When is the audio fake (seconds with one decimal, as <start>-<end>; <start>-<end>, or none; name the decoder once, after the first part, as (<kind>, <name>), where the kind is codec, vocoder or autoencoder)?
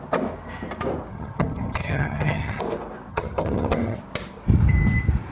1.1-2.6 (vocoder, HiFi-GAN); 3.1-4.0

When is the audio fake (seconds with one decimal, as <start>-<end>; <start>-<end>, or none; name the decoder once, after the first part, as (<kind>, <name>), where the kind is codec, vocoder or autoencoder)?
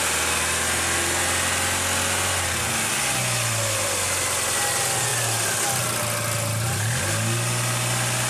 none